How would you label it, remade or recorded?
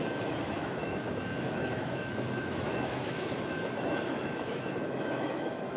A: remade